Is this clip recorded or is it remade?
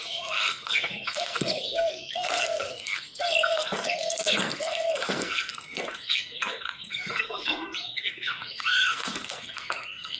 remade